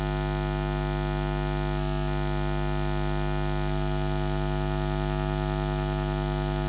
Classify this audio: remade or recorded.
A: recorded